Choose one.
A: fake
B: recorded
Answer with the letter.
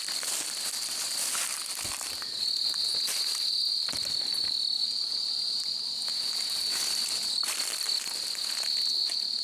B